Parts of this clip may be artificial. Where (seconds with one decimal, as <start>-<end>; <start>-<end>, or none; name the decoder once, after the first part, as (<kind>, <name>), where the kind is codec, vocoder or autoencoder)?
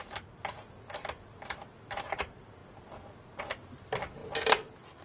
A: none